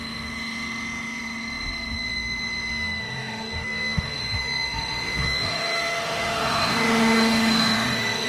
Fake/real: fake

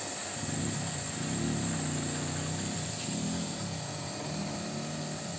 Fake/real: real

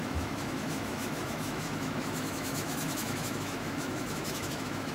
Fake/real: fake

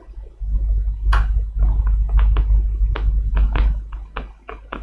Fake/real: real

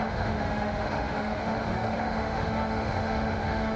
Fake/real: fake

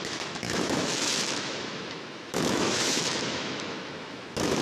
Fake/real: fake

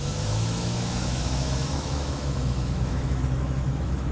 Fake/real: fake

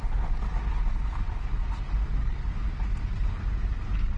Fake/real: real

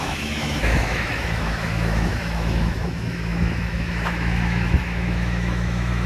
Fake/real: fake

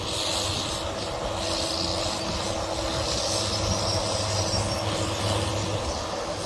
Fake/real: real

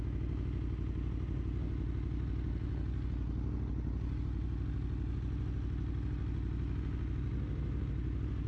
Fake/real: real